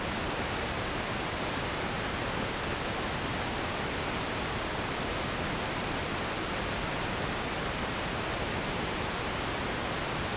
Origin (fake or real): real